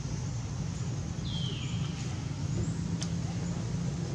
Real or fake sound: real